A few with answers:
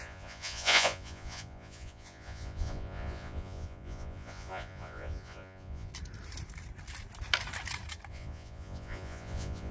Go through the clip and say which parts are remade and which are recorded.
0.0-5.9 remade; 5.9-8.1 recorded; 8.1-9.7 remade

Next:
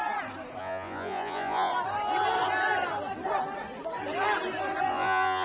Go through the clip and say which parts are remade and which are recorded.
0.0-0.6 recorded; 0.6-1.7 remade; 1.7-4.9 recorded; 4.9-5.4 remade